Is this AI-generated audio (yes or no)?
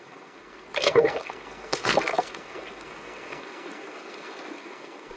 yes